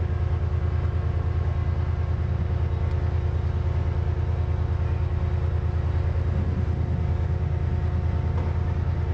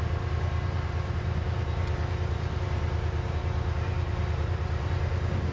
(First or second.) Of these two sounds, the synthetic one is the second